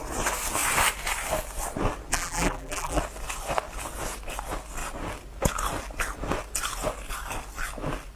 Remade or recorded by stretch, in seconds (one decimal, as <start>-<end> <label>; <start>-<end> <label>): 0.0-2.1 recorded; 2.1-3.0 remade; 3.0-8.2 recorded

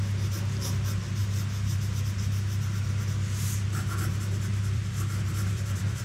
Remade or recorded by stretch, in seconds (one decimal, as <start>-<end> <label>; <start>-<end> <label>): 0.0-4.5 recorded; 4.5-6.0 remade

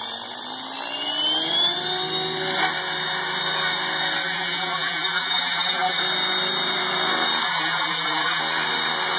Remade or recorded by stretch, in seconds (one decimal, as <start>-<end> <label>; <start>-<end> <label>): 0.0-4.2 recorded; 4.2-6.0 remade; 6.0-7.4 recorded; 7.4-8.4 remade; 8.4-9.2 recorded

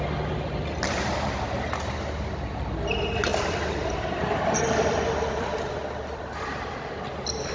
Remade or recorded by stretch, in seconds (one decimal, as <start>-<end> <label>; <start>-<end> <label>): 0.0-3.3 recorded; 3.3-6.3 remade; 6.3-7.5 recorded

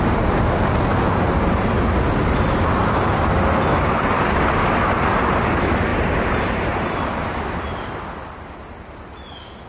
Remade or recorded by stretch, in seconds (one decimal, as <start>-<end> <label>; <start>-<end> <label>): 0.0-5.9 recorded; 5.9-6.4 remade; 6.4-9.7 recorded